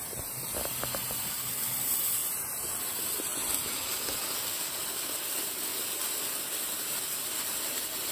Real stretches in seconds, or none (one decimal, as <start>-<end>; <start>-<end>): 0.0-8.1